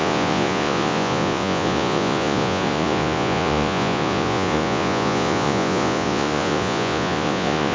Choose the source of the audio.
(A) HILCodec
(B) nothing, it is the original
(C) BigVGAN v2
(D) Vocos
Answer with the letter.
D